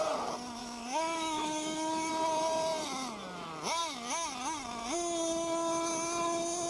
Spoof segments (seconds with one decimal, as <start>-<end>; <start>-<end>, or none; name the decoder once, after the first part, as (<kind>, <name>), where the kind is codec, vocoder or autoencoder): 0.6-2.1 (autoencoder, DAC-VAE)